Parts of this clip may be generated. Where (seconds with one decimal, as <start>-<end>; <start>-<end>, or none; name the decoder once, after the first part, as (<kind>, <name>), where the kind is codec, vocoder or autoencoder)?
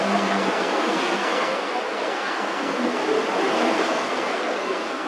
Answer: 0.0-3.0 (codec, SNAC); 3.5-5.1